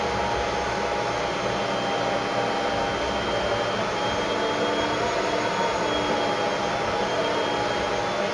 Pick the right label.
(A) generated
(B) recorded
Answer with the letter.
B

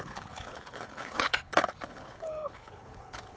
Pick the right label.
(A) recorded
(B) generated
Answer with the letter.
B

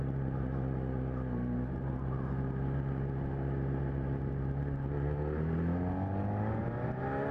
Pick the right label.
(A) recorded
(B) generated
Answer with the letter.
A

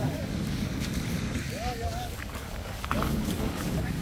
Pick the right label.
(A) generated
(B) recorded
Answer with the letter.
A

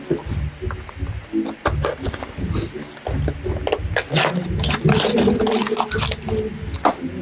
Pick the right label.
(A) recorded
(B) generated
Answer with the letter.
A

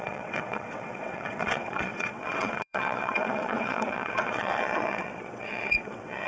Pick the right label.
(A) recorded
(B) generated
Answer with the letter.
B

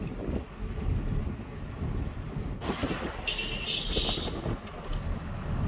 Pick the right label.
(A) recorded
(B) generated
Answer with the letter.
A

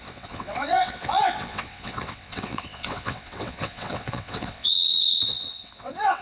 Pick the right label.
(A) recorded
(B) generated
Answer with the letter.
B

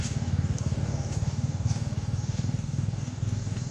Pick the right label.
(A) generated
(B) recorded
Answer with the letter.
A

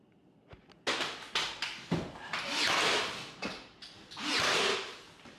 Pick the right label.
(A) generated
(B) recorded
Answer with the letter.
B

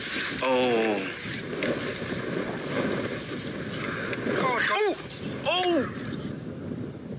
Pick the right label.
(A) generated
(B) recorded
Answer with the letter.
B